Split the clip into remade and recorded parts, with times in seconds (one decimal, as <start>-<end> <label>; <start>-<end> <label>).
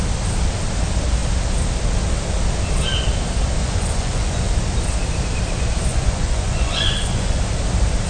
0.0-3.6 recorded; 3.6-4.5 remade; 4.5-5.9 recorded; 5.9-7.4 remade; 7.4-8.1 recorded